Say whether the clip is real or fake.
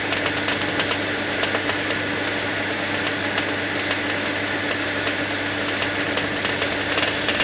real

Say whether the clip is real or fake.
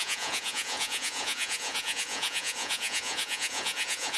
fake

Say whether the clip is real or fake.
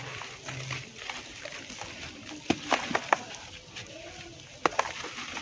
real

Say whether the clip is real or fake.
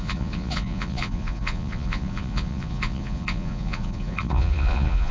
fake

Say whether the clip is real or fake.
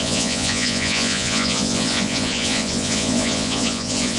fake